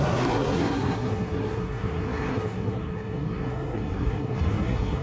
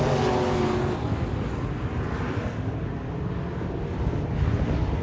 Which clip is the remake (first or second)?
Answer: first